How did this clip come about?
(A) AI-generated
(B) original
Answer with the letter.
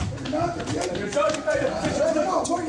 A